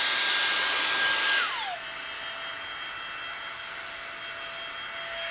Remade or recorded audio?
recorded